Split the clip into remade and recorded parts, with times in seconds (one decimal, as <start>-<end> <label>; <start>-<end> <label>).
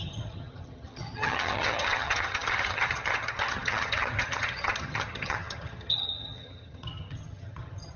0.0-8.0 remade